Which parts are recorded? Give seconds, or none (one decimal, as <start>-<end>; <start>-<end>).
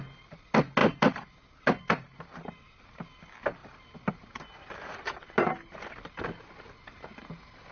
0.0-7.7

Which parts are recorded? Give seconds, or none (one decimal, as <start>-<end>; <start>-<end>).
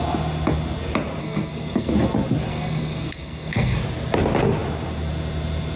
0.0-1.2; 1.9-2.5; 3.8-5.8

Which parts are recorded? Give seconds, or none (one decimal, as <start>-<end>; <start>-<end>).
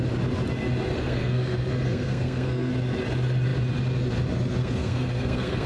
0.0-0.9; 2.7-4.6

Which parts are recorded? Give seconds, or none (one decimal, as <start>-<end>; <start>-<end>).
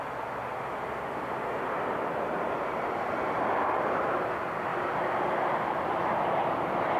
0.0-7.0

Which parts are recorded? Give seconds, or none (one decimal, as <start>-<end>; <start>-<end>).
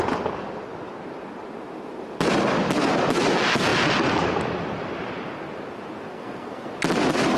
0.0-6.1; 6.7-7.4